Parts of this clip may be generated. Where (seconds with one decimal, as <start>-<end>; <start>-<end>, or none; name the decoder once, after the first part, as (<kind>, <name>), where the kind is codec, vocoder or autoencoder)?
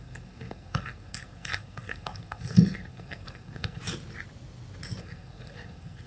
0.0-3.8 (codec, SNAC); 5.0-6.1